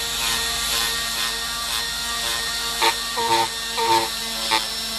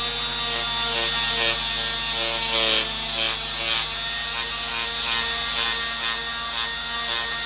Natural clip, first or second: second